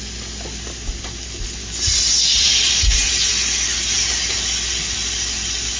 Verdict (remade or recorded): recorded